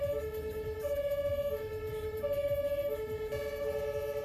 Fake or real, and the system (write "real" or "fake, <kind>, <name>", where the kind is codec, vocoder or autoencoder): real